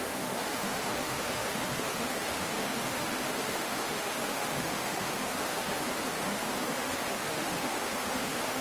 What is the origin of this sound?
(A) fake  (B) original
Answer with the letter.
A